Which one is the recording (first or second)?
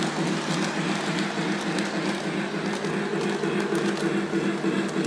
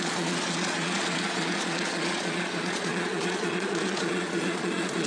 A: first